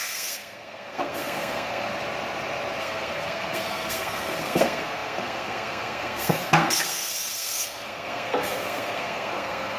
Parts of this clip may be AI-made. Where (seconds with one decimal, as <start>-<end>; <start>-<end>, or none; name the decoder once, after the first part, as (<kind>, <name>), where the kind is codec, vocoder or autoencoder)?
0.0-1.9 (codec, SNAC); 2.8-9.8